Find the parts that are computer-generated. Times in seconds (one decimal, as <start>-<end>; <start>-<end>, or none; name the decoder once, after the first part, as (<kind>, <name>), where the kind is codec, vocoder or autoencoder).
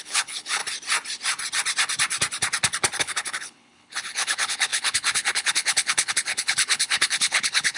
0.0-0.6 (codec, HILCodec); 3.0-7.8